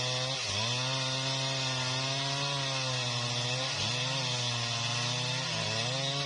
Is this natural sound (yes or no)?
yes